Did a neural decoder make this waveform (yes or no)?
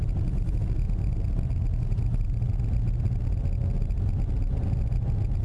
no